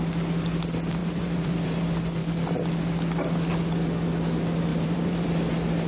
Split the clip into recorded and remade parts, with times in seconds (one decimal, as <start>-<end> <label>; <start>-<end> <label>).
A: 0.0-1.0 recorded; 1.0-1.8 remade; 1.8-4.7 recorded; 4.7-5.5 remade; 5.5-5.9 recorded